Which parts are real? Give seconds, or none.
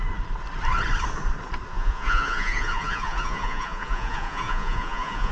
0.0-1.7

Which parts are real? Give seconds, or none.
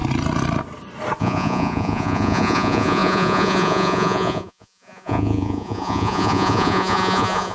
0.0-1.2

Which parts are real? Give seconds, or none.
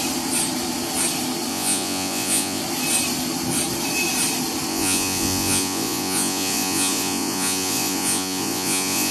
0.0-1.5; 2.6-4.7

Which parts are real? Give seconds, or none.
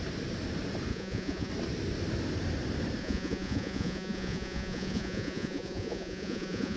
0.0-0.9; 1.5-3.0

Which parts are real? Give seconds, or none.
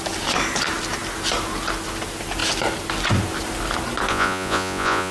0.0-4.1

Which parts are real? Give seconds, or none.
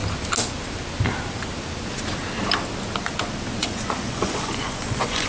0.0-3.6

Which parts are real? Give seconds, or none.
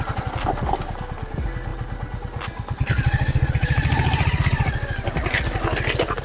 0.0-6.2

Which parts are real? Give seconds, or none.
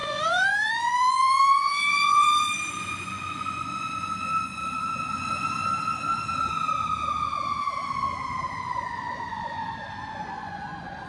4.9-8.5